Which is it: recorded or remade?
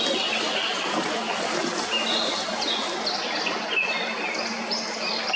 recorded